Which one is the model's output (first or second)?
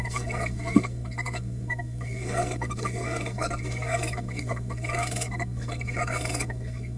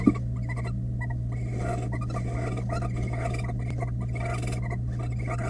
first